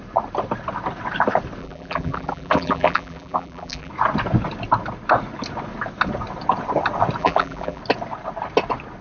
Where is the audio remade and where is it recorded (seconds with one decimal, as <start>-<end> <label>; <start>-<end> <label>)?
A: 0.0-1.6 recorded; 1.6-3.9 remade; 3.9-7.2 recorded; 7.2-7.8 remade; 7.8-9.0 recorded

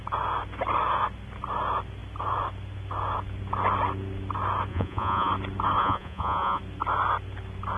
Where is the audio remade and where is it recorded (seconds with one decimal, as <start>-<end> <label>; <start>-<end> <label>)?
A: 0.0-4.7 recorded; 4.7-5.3 remade; 5.3-5.8 recorded; 5.8-6.6 remade; 6.6-7.8 recorded

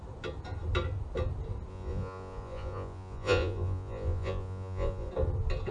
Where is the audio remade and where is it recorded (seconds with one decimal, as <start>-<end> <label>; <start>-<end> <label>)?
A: 0.0-1.7 recorded; 1.7-5.1 remade; 5.1-5.7 recorded

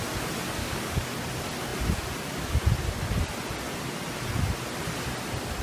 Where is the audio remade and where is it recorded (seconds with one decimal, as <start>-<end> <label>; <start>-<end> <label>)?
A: 0.0-0.6 recorded; 0.6-1.1 remade; 1.1-5.6 recorded

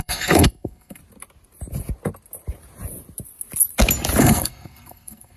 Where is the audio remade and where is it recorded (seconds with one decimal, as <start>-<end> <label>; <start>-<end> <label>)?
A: 0.0-1.0 remade; 1.0-4.2 recorded; 4.2-5.4 remade